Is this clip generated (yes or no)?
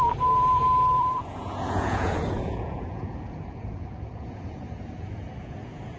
yes